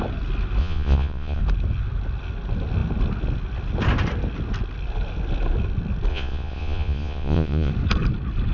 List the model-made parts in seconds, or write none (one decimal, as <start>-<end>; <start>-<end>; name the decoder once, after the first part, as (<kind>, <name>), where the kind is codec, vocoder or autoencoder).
0.6-1.4 (vocoder, Vocos); 6.1-7.7